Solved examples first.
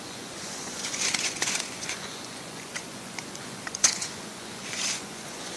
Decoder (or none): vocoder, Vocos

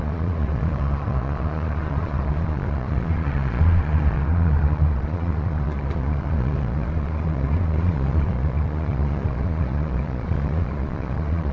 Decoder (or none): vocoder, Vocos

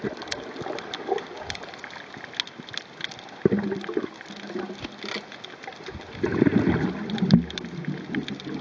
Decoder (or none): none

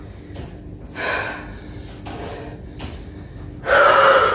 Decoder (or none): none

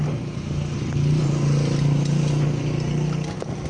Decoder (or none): none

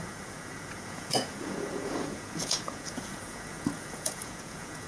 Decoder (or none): vocoder, Vocos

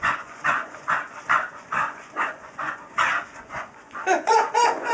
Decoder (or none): vocoder, Vocos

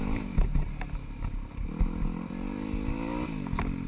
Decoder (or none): none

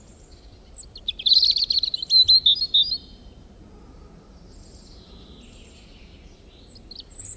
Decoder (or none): none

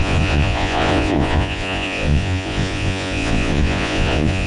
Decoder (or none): vocoder, Vocos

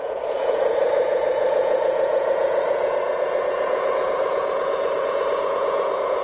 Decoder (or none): vocoder, Vocos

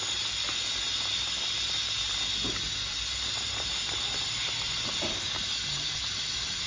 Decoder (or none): none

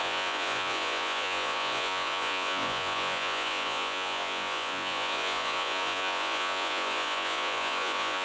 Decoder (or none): vocoder, Vocos